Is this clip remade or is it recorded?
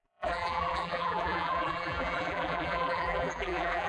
remade